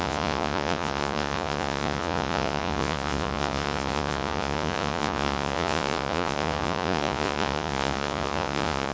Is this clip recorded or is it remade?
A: remade